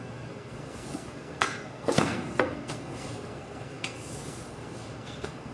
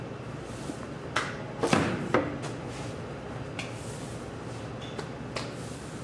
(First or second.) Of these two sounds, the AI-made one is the first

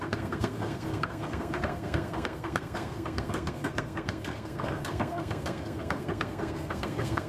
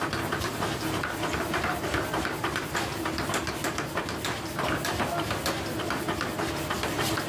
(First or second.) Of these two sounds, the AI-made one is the first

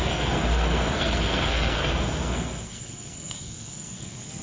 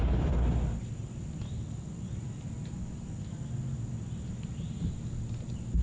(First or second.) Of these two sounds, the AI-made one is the first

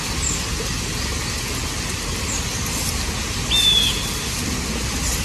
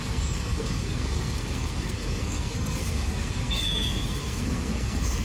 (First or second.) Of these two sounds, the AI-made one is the second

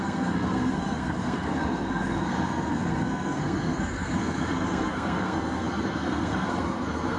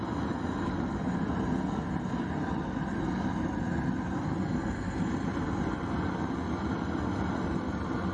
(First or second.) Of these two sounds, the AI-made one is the first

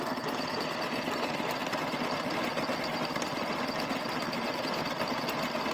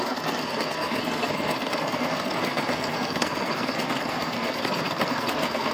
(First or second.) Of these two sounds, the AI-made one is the second